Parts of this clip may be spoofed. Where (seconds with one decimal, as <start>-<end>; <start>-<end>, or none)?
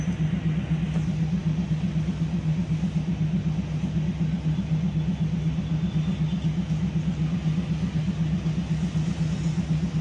none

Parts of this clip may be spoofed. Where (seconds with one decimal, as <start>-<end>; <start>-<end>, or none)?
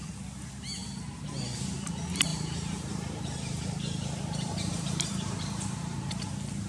2.3-6.3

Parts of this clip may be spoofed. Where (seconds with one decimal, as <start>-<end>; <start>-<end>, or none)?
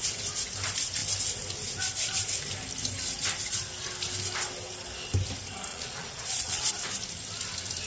5.7-6.7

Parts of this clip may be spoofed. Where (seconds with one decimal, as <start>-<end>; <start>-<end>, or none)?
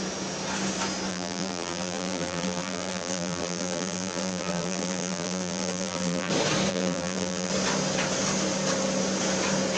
1.1-6.3; 6.7-7.5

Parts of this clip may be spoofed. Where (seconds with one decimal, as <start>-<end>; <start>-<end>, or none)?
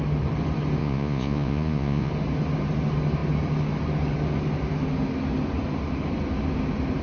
0.8-2.1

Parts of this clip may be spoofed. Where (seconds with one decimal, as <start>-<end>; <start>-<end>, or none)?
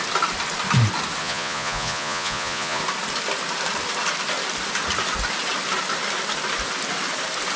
1.2-2.8